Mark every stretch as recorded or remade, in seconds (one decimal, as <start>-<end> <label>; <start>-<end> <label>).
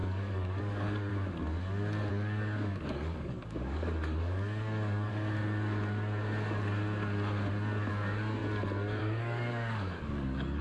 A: 0.0-1.1 remade; 1.1-2.1 recorded; 2.1-5.1 remade; 5.1-7.9 recorded; 7.9-8.4 remade; 8.4-9.0 recorded; 9.0-10.6 remade